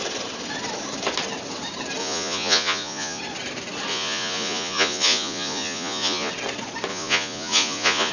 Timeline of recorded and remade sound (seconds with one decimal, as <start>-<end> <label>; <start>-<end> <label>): 0.0-2.0 recorded; 2.0-3.2 remade; 3.2-3.9 recorded; 3.9-6.3 remade; 6.3-6.9 recorded; 6.9-8.1 remade